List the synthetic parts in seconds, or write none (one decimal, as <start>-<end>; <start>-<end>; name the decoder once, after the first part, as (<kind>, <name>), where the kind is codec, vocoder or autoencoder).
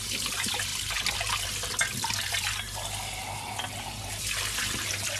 none